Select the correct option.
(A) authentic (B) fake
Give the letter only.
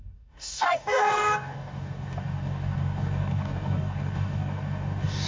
B